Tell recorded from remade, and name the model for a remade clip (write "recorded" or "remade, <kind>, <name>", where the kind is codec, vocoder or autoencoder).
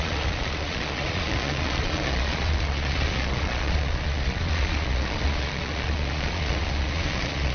remade, vocoder, Vocos